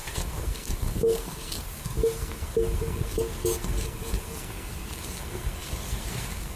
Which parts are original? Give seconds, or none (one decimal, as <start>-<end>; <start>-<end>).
none